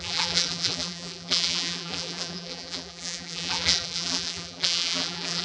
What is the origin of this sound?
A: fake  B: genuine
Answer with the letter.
A